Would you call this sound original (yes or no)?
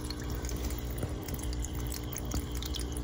no